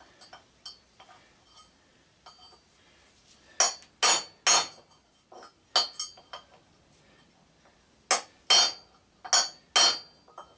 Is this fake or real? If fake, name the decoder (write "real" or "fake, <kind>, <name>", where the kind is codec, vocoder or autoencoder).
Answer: real